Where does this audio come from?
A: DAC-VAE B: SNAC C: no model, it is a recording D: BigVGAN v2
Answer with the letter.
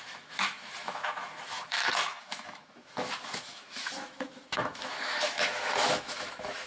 A